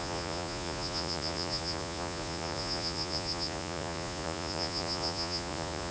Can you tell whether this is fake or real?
fake